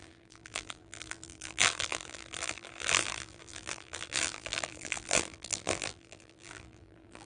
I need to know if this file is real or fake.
fake